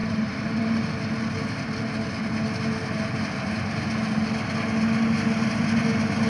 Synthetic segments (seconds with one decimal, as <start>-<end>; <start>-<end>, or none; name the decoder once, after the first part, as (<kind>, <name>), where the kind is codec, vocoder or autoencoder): 0.0-0.6 (vocoder, BigVGAN v2)